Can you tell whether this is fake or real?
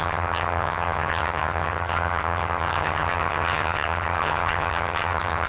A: fake